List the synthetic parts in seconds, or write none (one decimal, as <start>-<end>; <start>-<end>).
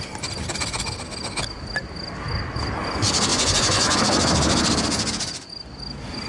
3.3-4.0